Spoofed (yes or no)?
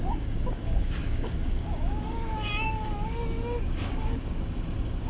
yes